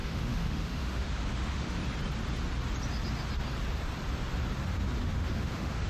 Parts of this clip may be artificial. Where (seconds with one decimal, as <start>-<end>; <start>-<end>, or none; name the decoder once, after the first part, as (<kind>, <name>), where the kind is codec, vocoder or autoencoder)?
0.0-1.8 (autoencoder, DAC-VAE); 5.0-5.9